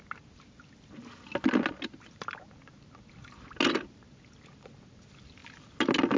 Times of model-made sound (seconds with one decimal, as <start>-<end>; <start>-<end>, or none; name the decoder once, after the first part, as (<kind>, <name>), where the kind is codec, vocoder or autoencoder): none